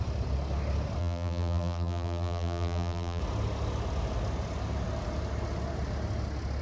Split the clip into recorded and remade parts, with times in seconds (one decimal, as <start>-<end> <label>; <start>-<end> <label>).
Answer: 0.0-1.0 recorded; 1.0-3.2 remade; 3.2-6.6 recorded